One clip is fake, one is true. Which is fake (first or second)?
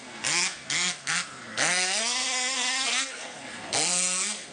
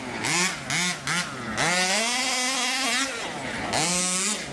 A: first